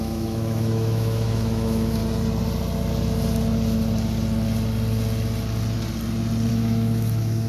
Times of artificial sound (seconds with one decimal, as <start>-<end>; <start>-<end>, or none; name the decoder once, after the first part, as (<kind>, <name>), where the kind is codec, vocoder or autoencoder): 0.0-2.0 (autoencoder, DAC-VAE); 6.5-7.5